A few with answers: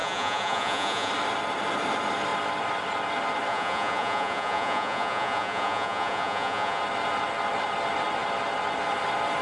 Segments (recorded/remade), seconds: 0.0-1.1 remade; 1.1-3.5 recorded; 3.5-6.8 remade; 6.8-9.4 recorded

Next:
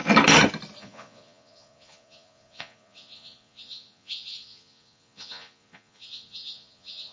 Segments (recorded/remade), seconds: 0.0-0.8 recorded; 0.8-7.1 remade

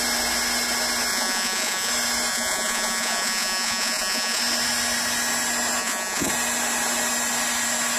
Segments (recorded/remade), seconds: 0.0-1.1 recorded; 1.1-1.9 remade; 1.9-2.3 recorded; 2.3-4.4 remade; 4.4-5.8 recorded; 5.8-6.3 remade; 6.3-8.0 recorded

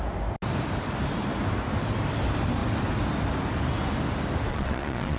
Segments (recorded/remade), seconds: 0.0-4.5 recorded; 4.5-5.2 remade